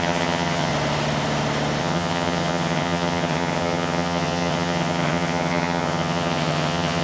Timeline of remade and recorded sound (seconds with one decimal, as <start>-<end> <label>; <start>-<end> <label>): 0.0-0.7 remade; 0.7-1.8 recorded; 1.8-7.0 remade